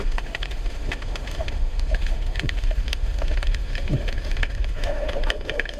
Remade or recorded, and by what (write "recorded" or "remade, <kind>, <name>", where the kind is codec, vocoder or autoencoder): remade, autoencoder, DAC-VAE